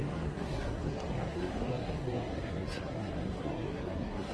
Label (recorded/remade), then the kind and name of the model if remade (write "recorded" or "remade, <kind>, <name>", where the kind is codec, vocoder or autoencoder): remade, codec, SNAC